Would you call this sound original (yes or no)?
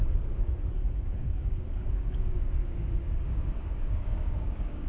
no